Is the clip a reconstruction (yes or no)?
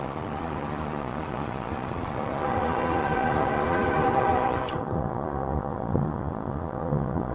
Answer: yes